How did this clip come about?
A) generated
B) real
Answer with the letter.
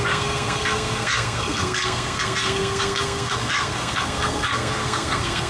A